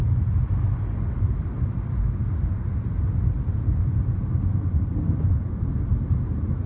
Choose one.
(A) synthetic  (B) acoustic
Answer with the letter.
B